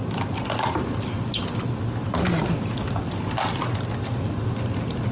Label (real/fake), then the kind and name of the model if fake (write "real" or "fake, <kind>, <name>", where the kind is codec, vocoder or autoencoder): real